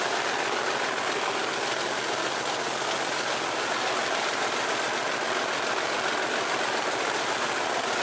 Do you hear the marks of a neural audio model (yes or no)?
no